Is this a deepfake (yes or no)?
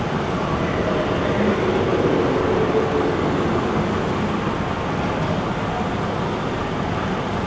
no